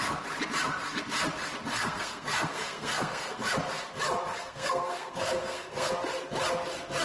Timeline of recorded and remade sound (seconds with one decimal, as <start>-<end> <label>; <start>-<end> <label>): 0.0-1.7 recorded; 1.7-3.5 remade; 3.5-4.3 recorded; 4.3-5.9 remade; 5.9-7.0 recorded